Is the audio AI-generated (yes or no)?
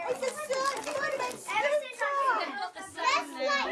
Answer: no